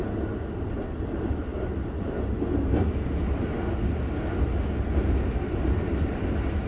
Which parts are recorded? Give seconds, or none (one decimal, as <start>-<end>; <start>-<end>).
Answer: 0.0-6.7